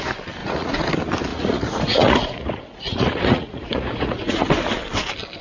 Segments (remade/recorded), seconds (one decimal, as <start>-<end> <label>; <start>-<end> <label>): 0.0-0.4 recorded; 0.4-0.9 remade; 0.9-1.3 recorded; 1.3-4.5 remade; 4.5-5.4 recorded